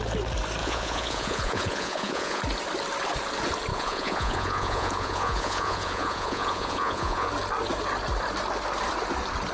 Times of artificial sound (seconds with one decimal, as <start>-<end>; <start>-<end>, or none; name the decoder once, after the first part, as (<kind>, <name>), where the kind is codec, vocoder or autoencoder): 0.6-2.4 (vocoder, Vocos); 3.7-7.3